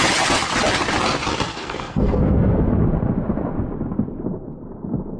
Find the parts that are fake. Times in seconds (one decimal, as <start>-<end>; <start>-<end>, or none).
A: 1.5-2.6